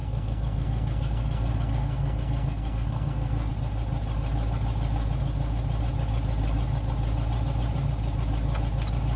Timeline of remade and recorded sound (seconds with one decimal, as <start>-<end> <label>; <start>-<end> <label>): 0.0-3.5 remade; 3.5-9.2 recorded